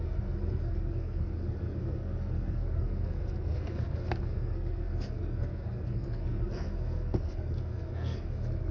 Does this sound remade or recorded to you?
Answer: remade